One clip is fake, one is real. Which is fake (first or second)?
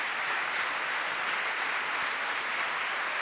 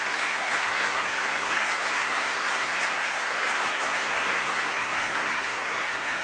second